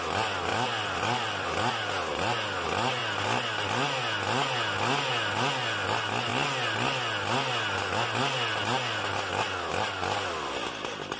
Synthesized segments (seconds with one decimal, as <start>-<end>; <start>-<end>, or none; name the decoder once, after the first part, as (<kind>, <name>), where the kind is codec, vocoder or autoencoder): 0.5-1.7 (vocoder, BigVGAN v2)